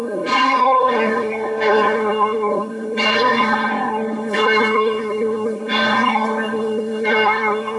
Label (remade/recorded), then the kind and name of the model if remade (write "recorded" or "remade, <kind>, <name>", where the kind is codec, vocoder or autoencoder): remade, codec, SNAC